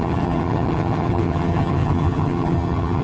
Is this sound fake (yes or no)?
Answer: yes